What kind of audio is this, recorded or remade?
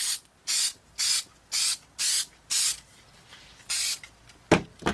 recorded